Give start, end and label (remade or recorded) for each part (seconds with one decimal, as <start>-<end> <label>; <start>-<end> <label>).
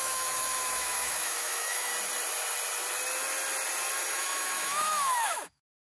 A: 0.0-1.9 remade; 1.9-4.1 recorded; 4.1-5.9 remade